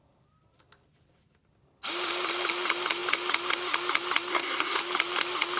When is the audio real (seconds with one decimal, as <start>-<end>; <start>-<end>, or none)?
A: 0.0-4.3; 4.8-5.6

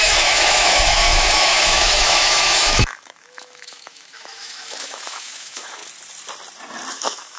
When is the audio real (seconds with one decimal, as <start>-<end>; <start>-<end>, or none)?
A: 5.8-6.9

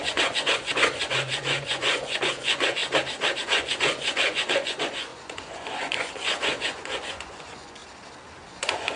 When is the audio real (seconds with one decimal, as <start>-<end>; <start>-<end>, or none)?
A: 2.8-3.4; 7.8-8.4

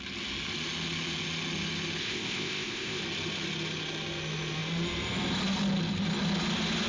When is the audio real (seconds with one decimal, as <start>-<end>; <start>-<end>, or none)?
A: 0.0-2.0; 3.0-6.9

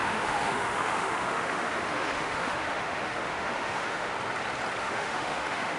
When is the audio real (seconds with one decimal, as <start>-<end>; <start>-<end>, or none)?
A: 4.1-4.8

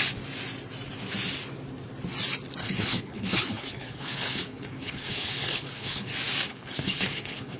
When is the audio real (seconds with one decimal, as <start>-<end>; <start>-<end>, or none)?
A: 0.0-2.6; 6.1-6.5

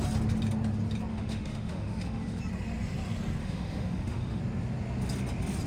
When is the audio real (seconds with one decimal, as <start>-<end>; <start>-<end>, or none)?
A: 0.0-1.1; 2.4-3.4; 4.4-5.7